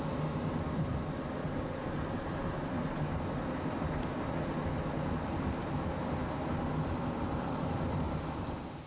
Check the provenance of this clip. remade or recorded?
recorded